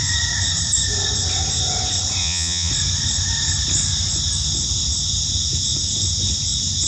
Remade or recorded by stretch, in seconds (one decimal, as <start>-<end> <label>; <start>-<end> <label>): 0.0-2.2 recorded; 2.2-2.7 remade; 2.7-6.9 recorded